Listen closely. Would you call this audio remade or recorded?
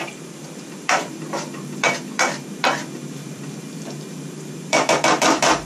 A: remade